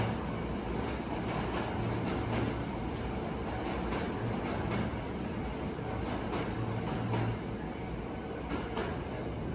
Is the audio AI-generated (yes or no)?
no